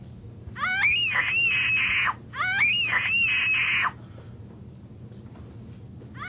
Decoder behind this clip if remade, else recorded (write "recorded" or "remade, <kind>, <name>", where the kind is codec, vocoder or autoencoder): recorded